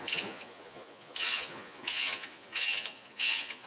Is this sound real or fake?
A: fake